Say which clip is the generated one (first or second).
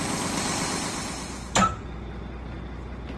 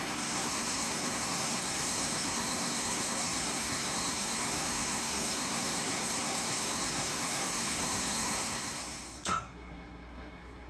second